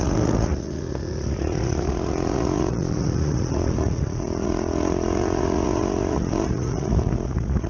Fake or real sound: fake